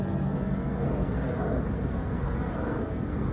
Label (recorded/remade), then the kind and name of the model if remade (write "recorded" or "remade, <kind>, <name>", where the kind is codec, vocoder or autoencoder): remade, codec, SNAC